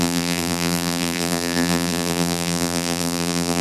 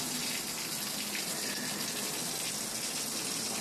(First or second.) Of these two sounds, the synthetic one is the first